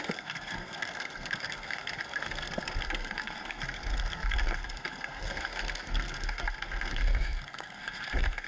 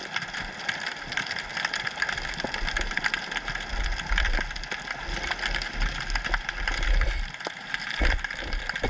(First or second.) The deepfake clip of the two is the first